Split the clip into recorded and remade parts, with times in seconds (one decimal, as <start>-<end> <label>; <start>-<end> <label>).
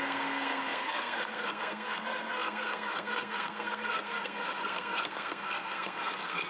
0.0-6.5 remade